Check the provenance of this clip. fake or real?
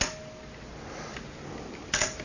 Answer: real